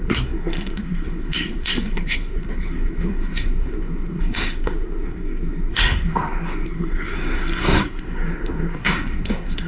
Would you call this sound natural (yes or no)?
no